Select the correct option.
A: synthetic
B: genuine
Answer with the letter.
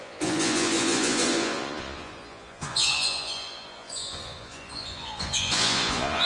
A